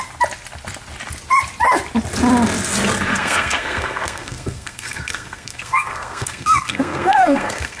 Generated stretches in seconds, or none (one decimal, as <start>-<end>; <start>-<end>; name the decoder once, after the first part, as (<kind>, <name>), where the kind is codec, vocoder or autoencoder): 3.1-7.8 (codec, SNAC)